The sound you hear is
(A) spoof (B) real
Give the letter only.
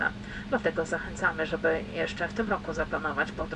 B